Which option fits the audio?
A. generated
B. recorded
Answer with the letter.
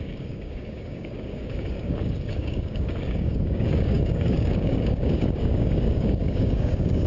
A